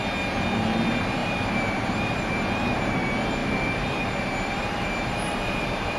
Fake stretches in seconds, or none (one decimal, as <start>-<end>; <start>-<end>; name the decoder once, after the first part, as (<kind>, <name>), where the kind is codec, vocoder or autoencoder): 1.2-2.3 (vocoder, BigVGAN v2); 3.4-6.0